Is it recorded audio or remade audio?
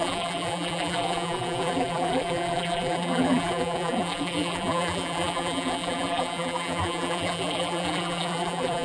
remade